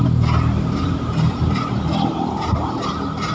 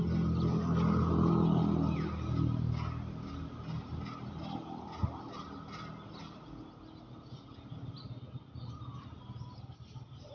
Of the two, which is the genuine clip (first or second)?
second